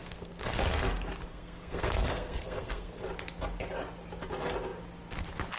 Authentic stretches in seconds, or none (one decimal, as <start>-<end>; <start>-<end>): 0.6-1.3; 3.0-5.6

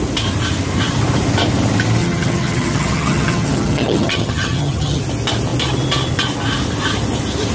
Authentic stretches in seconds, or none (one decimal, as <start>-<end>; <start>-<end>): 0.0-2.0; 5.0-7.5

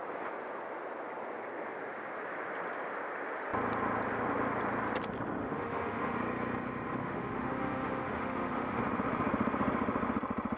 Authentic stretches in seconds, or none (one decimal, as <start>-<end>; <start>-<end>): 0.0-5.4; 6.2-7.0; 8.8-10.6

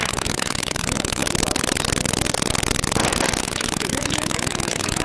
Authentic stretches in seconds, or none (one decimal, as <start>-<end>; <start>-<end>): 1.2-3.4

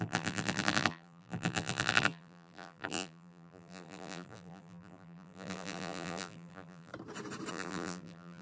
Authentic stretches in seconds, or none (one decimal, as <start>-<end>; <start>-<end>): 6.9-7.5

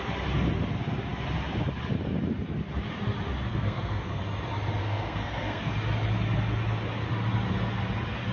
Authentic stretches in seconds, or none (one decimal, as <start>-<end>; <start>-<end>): 0.0-3.5; 4.2-4.8; 5.7-8.3

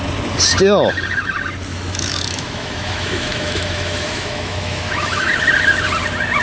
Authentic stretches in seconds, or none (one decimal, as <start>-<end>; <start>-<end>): 0.0-1.7; 5.3-6.4

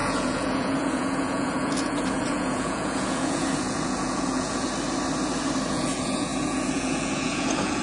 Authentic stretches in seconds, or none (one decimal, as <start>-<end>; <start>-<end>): 4.7-5.7